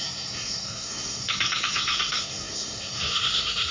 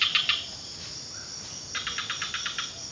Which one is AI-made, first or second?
first